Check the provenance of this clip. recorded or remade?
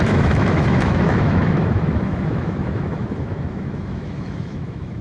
remade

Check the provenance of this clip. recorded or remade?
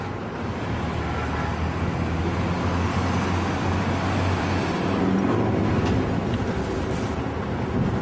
recorded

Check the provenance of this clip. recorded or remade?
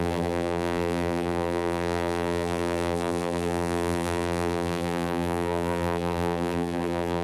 remade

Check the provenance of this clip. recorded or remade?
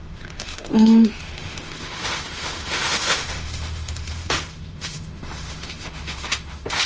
remade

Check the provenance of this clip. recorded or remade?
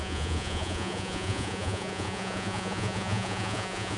remade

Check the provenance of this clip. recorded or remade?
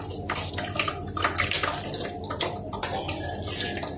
recorded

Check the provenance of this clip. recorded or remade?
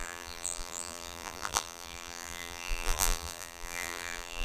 remade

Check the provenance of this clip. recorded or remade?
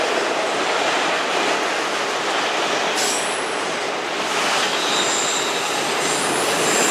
recorded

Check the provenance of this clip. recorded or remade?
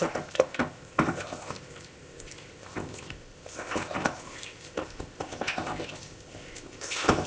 remade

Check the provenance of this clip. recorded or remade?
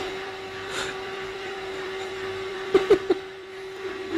remade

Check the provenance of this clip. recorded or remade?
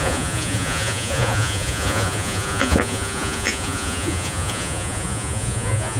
remade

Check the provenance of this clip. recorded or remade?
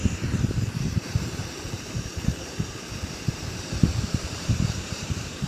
remade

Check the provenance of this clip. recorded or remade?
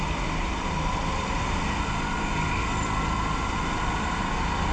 recorded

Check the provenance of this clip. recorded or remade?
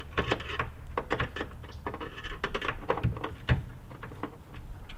recorded